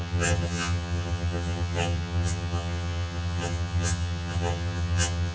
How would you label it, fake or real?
fake